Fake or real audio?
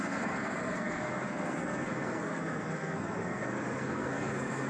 fake